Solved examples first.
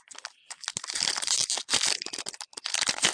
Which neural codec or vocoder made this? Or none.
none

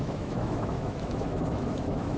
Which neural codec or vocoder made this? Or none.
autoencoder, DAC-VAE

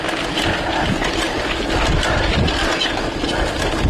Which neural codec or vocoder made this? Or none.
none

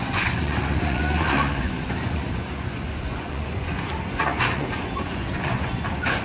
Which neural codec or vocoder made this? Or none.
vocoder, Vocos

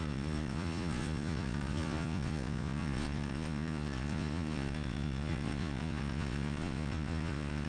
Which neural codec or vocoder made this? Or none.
vocoder, Vocos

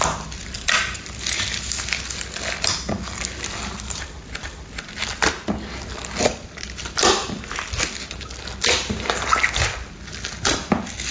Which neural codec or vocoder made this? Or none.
none